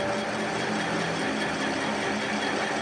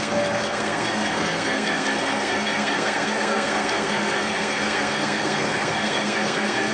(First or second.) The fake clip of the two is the second